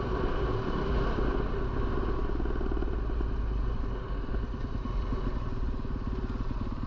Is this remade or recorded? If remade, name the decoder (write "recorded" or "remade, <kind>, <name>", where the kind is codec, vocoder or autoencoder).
recorded